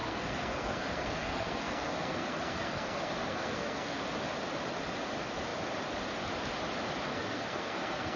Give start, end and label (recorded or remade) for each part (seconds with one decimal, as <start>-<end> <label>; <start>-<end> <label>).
0.0-4.0 remade; 4.0-7.1 recorded; 7.1-8.2 remade